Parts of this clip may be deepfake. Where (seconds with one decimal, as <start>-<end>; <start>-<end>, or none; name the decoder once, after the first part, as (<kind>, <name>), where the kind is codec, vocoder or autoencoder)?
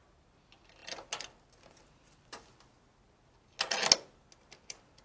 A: none